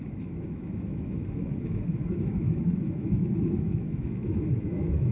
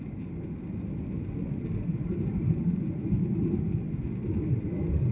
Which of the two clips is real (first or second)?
second